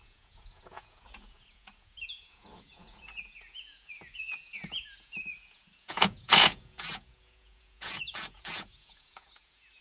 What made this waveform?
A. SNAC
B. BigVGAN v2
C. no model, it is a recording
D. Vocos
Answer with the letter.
D